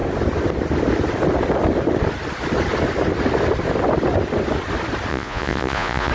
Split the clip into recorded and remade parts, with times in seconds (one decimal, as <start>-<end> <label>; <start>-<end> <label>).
0.0-5.1 recorded; 5.1-6.1 remade